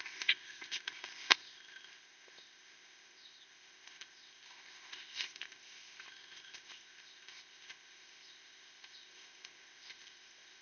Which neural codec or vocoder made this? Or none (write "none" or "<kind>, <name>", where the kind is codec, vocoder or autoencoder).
codec, ZipCodec